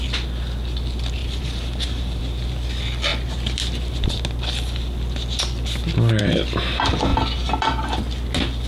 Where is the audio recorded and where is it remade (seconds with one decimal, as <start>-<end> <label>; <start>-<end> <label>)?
0.0-1.2 recorded; 1.2-2.2 remade; 2.2-8.7 recorded